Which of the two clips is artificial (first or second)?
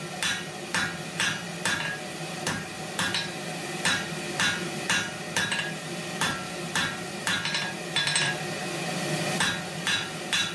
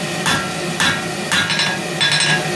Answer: first